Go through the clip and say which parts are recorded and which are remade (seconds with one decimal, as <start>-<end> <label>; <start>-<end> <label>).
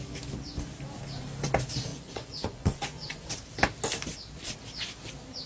0.0-1.9 recorded; 1.9-3.3 remade; 3.3-5.5 recorded